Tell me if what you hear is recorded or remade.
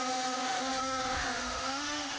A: remade